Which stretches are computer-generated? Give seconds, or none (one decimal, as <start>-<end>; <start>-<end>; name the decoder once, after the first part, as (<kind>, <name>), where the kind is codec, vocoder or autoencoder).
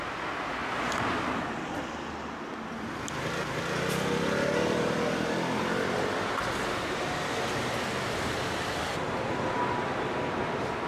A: none